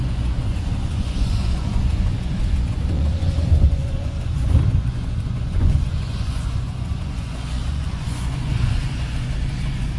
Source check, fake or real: fake